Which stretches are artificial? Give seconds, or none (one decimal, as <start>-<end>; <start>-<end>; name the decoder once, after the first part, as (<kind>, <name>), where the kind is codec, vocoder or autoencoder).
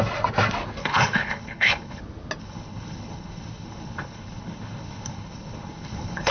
0.8-2.0 (codec, HILCodec); 2.4-6.3